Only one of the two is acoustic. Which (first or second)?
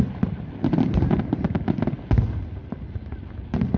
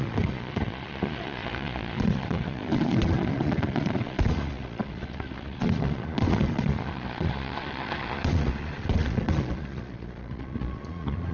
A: first